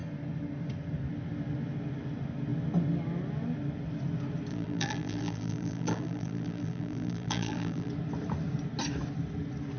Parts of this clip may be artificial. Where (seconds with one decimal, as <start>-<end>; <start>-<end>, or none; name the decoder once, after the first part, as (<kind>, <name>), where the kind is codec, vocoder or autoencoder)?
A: 4.5-7.9 (vocoder, BigVGAN v2)